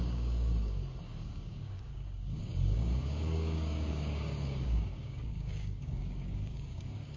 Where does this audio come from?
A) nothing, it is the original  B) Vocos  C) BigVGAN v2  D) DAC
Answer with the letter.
D